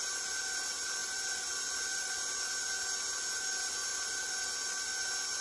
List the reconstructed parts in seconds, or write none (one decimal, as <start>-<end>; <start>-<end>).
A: 1.0-2.3; 3.9-4.5